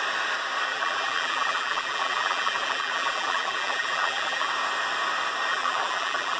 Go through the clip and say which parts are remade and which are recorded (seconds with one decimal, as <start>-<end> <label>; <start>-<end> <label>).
0.0-0.7 recorded; 0.7-4.5 remade; 4.5-5.5 recorded; 5.5-6.4 remade